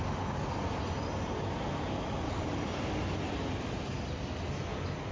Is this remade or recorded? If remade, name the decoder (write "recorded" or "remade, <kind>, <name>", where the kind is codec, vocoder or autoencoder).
recorded